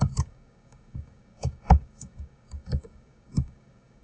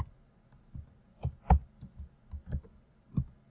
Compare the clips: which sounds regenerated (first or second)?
first